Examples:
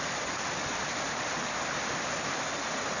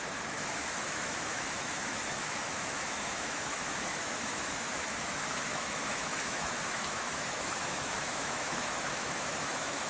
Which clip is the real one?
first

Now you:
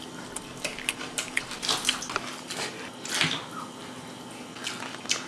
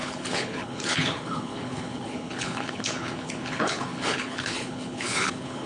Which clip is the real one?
first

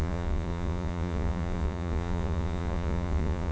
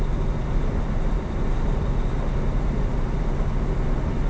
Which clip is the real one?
second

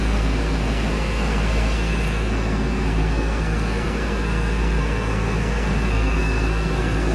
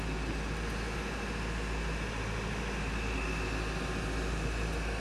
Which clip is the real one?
second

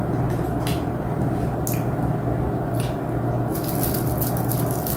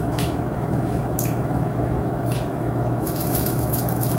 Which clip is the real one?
first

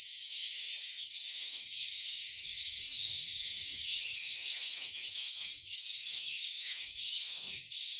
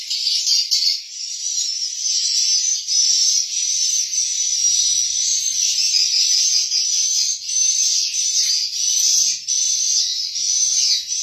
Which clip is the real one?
second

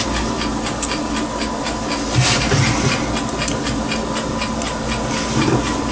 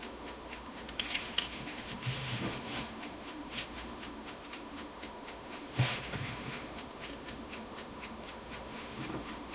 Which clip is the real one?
first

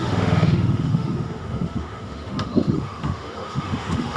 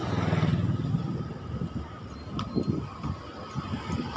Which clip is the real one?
second